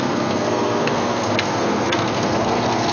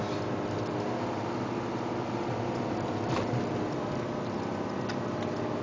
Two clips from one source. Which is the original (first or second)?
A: second